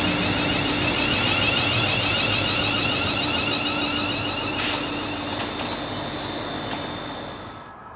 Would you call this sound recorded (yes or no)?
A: yes